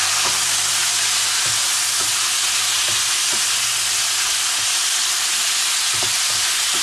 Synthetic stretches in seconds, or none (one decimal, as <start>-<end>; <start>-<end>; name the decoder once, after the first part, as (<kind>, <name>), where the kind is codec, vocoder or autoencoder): none